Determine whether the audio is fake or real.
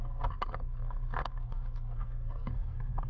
fake